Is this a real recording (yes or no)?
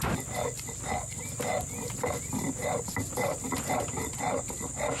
yes